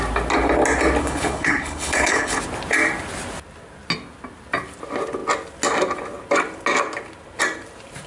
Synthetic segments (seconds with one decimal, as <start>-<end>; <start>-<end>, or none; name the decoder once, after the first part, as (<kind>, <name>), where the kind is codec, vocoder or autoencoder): 1.0-2.4 (codec, HILCodec)